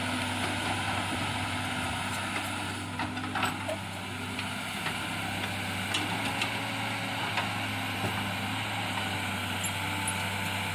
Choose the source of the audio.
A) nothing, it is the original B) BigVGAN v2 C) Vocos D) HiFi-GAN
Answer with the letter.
A